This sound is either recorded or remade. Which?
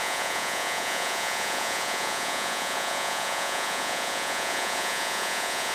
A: remade